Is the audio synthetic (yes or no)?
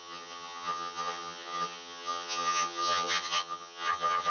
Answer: yes